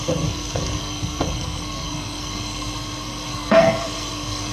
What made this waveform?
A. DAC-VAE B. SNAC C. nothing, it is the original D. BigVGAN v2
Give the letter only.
B